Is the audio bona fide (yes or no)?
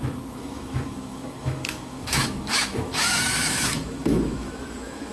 no